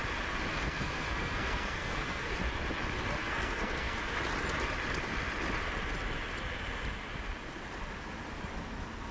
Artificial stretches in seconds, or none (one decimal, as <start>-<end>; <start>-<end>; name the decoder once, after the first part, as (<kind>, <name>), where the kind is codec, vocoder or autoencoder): 0.5-2.3 (codec, SNAC); 3.2-4.0